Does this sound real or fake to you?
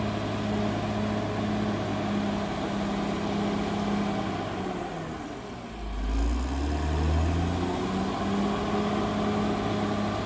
real